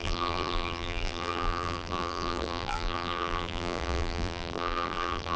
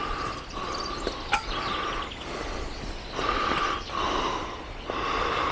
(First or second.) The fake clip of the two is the first